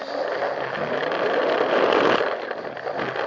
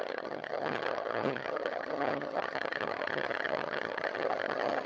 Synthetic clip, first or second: second